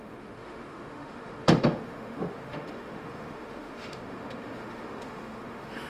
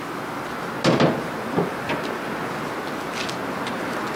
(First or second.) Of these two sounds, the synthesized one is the first